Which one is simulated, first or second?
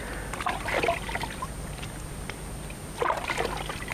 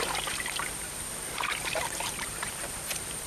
second